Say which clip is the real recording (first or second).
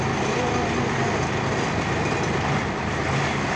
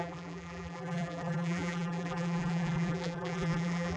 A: first